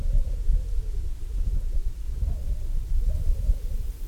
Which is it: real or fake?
fake